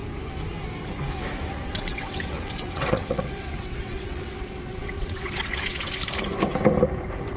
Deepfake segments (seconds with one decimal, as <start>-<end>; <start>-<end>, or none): 1.5-5.9